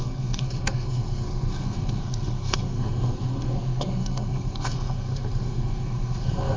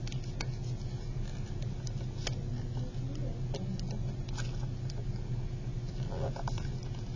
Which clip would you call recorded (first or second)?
second